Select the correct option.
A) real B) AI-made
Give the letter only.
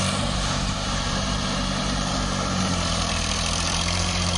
B